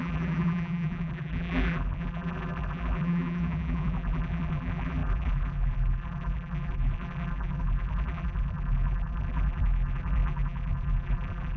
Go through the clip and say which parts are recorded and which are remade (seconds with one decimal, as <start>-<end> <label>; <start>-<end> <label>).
0.0-11.6 remade